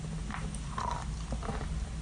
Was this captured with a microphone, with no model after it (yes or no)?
yes